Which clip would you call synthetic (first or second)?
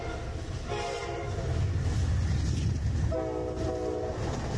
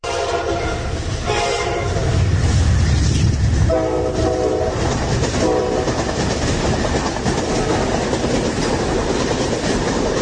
second